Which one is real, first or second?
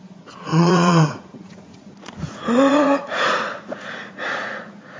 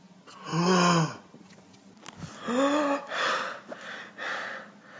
second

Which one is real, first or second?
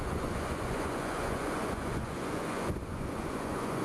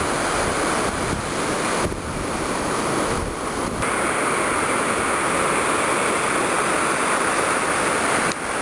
second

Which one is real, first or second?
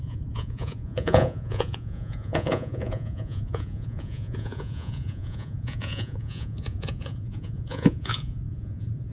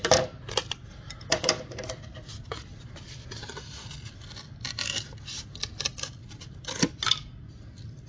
second